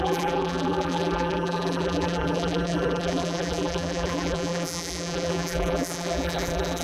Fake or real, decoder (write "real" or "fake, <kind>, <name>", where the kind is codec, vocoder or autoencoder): fake, vocoder, BigVGAN v2